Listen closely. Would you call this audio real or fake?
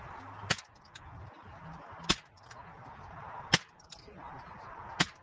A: real